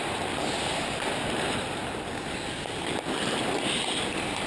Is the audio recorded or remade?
recorded